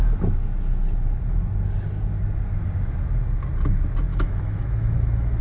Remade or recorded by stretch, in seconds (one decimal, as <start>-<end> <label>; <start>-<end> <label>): 0.0-4.1 recorded; 4.1-5.4 remade